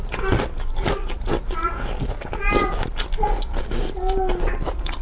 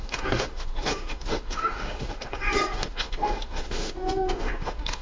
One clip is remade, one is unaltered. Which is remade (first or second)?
second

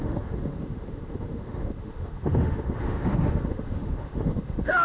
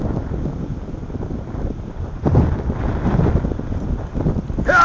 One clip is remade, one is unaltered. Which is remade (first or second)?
first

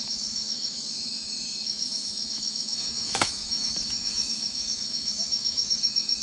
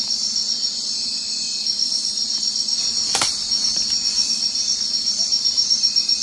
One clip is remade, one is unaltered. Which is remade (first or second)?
first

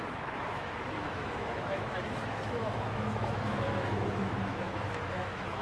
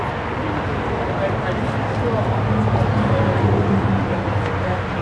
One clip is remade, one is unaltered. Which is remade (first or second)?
first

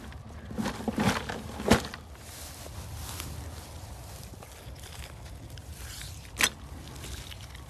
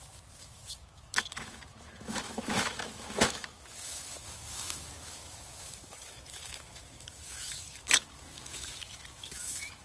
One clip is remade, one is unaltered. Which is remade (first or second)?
second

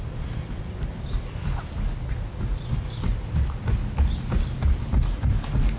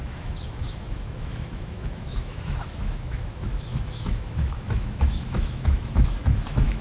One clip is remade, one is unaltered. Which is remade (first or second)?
second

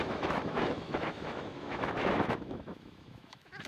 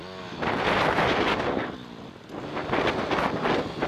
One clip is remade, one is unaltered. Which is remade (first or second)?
first